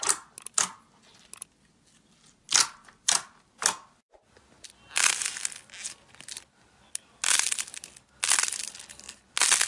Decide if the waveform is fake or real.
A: real